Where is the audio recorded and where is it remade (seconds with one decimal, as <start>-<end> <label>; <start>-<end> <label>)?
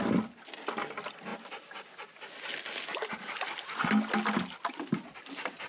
0.0-5.7 recorded